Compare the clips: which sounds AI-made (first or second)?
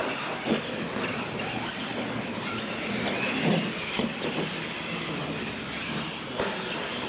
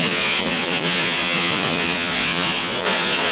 second